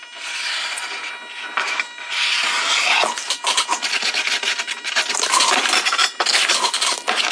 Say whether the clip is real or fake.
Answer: real